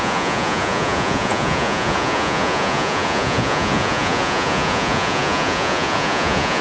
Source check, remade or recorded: remade